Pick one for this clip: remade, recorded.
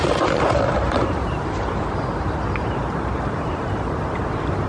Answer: remade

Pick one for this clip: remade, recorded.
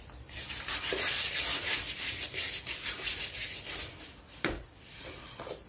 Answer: remade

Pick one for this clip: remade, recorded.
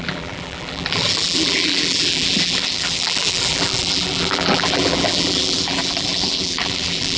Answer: remade